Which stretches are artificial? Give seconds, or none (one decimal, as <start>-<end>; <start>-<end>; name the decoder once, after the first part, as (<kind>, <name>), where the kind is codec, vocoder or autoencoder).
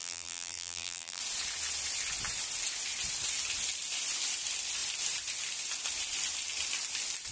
0.0-1.2 (vocoder, BigVGAN v2)